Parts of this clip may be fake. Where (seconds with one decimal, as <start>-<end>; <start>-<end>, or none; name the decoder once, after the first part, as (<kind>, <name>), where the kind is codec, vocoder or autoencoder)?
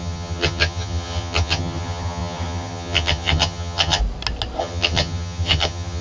0.0-4.0 (vocoder, HiFi-GAN); 4.6-6.0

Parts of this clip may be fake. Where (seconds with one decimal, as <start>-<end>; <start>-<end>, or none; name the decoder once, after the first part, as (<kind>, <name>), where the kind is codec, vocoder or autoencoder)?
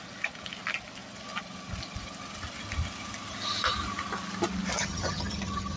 4.8-5.8 (vocoder, HiFi-GAN)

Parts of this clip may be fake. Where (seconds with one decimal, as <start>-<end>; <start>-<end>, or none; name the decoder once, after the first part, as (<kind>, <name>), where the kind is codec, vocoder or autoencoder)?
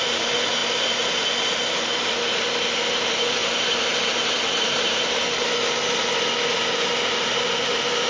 3.4-5.5 (vocoder, BigVGAN v2)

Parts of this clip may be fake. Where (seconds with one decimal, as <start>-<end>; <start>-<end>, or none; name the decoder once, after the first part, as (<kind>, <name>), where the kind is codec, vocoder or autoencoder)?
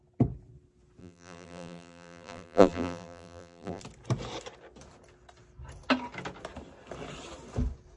1.0-3.8 (vocoder, BigVGAN v2)